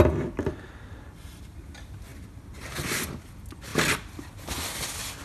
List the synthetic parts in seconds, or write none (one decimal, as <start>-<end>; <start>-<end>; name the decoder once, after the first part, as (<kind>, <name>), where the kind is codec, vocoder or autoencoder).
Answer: none